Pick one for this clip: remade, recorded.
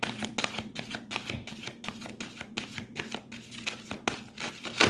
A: recorded